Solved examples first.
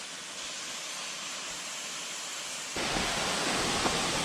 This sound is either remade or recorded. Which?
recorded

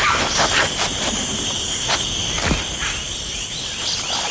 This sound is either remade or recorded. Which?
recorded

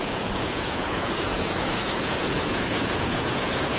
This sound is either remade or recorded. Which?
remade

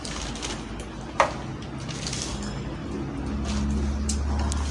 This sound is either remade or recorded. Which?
recorded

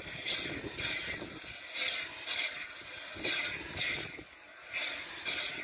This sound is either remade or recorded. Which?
recorded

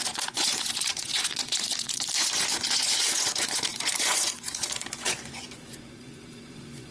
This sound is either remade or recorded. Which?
remade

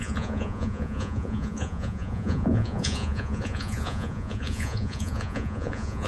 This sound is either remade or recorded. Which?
remade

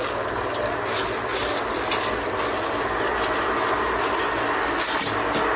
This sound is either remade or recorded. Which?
recorded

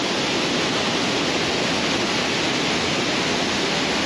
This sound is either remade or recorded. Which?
recorded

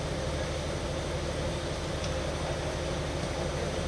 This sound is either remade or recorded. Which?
recorded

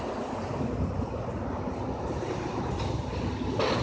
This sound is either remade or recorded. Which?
recorded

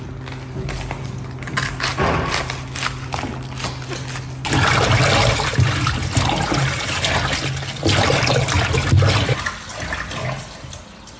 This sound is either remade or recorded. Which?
recorded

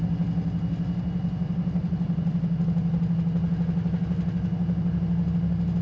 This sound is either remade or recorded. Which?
recorded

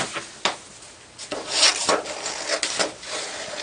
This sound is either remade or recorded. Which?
recorded